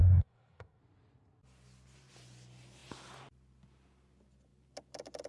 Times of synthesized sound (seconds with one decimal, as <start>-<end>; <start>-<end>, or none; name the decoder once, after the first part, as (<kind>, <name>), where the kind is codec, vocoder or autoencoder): 0.0-0.8 (codec, SNAC)